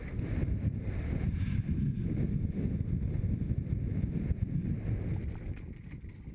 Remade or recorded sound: recorded